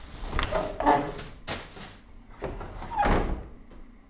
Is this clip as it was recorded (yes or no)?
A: yes